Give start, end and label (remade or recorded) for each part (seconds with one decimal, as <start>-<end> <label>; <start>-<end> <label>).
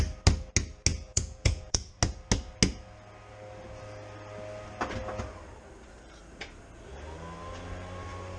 0.0-0.9 recorded; 0.9-1.9 remade; 1.9-8.4 recorded